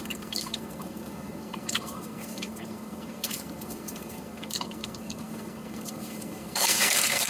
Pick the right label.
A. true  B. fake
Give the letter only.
B